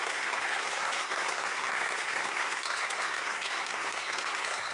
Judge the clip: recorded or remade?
remade